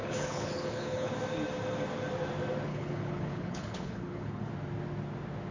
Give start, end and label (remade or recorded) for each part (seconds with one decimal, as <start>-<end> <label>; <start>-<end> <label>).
0.0-1.1 remade; 1.1-2.7 recorded; 2.7-4.5 remade; 4.5-5.5 recorded